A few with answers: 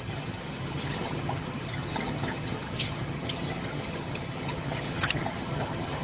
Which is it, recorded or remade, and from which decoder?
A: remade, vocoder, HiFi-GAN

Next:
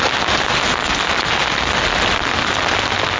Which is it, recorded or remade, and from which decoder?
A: recorded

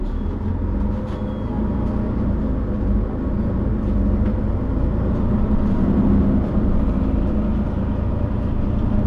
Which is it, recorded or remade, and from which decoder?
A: recorded